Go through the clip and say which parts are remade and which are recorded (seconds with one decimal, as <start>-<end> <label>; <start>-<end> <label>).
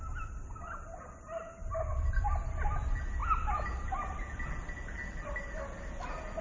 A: 0.0-6.4 recorded